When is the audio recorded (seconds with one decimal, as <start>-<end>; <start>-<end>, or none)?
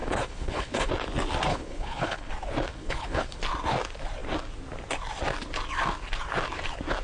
0.9-1.5; 2.3-2.7; 3.4-7.0